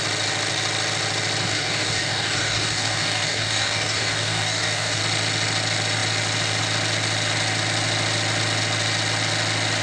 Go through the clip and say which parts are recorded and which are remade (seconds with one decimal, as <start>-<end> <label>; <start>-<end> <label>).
0.0-1.4 recorded; 1.4-5.0 remade; 5.0-9.8 recorded